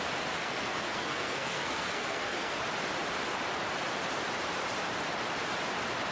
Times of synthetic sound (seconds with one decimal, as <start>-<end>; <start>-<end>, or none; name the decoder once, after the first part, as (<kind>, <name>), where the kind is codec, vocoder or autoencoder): 0.4-2.6 (codec, SNAC)